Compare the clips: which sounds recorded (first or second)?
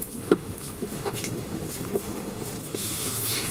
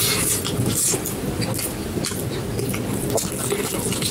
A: second